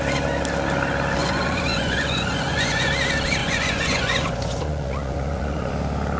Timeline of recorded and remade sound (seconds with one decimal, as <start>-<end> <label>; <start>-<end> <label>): 0.0-1.2 recorded; 1.2-2.9 remade; 2.9-3.4 recorded; 3.4-5.7 remade; 5.7-6.2 recorded

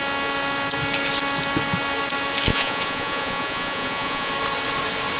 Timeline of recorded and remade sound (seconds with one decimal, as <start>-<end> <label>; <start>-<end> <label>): 0.0-2.5 recorded; 2.5-4.3 remade; 4.3-5.2 recorded

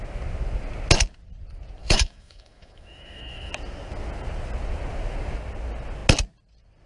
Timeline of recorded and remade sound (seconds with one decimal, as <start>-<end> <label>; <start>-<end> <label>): 0.0-1.8 recorded; 1.8-3.5 remade; 3.5-6.9 recorded

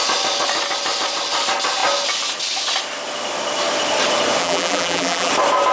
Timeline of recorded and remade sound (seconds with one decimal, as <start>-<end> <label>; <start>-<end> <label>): 0.0-4.4 recorded; 4.4-5.3 remade; 5.3-5.7 recorded